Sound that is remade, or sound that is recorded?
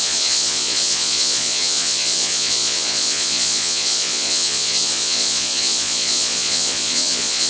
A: remade